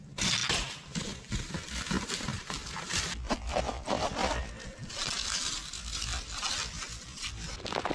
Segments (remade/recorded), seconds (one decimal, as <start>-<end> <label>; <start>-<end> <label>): 0.0-7.9 recorded

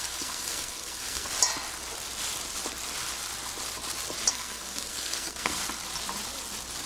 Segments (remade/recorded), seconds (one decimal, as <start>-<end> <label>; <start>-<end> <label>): 0.0-1.3 remade; 1.3-4.3 recorded; 4.3-5.6 remade; 5.6-6.9 recorded

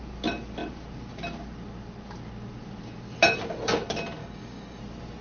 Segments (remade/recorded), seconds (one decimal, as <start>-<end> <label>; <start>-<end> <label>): 0.0-4.2 recorded; 4.2-4.8 remade; 4.8-5.2 recorded

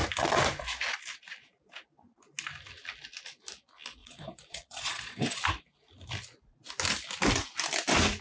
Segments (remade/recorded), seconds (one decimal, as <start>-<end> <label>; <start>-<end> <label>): 0.0-4.0 recorded; 4.0-5.4 remade; 5.4-8.2 recorded

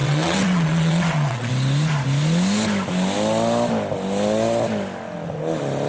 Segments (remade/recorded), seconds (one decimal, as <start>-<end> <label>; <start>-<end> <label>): 0.0-1.5 remade; 1.5-5.9 recorded

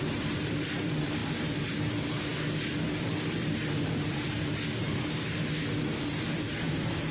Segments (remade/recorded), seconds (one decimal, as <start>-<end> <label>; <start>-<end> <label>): 0.0-2.3 remade; 2.3-3.0 recorded; 3.0-7.1 remade

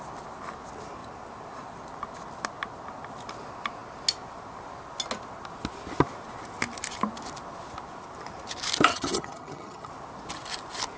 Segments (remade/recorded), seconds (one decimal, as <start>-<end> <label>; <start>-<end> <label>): 0.0-8.9 recorded; 8.9-9.9 remade; 9.9-11.0 recorded